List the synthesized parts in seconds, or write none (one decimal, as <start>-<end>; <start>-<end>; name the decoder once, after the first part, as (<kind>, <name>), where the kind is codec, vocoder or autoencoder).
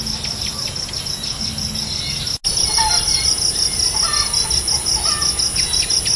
none